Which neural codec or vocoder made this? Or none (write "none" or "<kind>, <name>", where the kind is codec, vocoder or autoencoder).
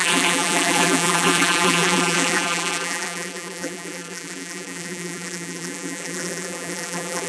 vocoder, BigVGAN v2